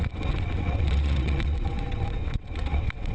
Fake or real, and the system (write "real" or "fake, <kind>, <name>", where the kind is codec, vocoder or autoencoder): fake, vocoder, WaveNeXt